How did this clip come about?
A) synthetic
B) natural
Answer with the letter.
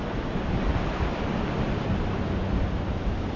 B